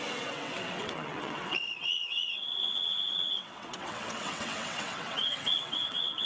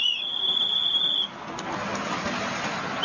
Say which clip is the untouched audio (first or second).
second